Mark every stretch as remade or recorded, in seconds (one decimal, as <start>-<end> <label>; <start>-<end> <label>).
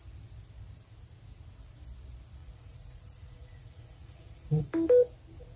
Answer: 0.0-2.4 recorded; 2.4-4.6 remade; 4.6-5.6 recorded